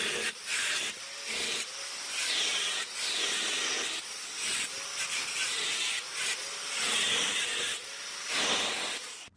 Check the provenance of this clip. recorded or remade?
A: recorded